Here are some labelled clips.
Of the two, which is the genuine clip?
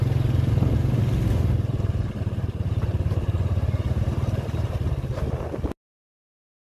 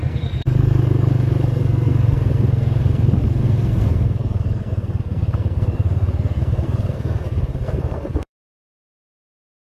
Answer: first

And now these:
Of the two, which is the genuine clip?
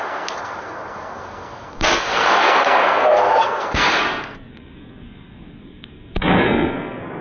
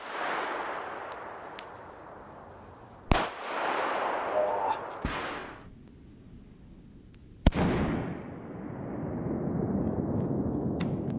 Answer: second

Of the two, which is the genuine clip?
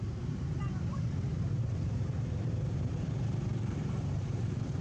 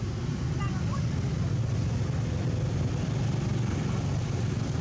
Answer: second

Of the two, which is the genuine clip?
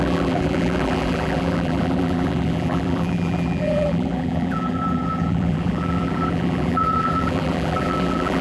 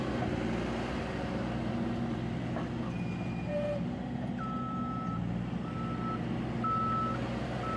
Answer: second